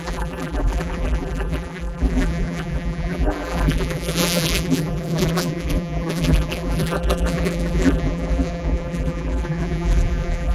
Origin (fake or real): fake